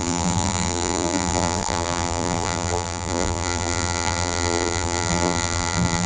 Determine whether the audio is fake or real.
fake